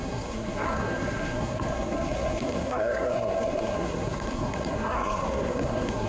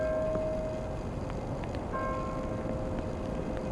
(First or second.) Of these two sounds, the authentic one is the second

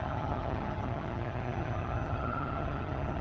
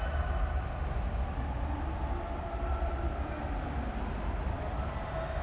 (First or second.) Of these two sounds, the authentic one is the second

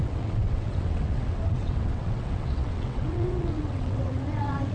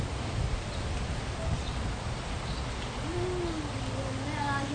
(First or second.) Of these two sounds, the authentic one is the second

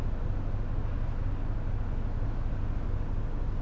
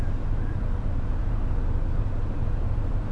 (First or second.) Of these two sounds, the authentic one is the first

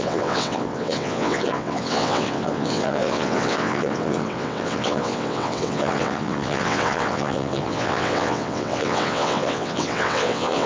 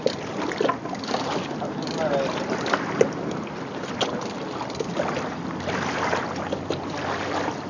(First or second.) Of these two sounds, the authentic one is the second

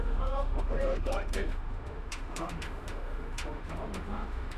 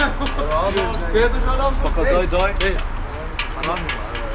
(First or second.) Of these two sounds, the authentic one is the second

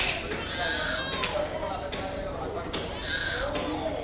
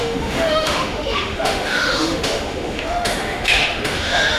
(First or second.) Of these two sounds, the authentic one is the first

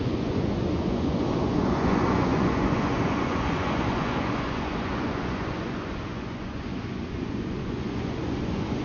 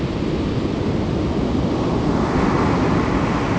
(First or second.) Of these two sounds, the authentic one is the second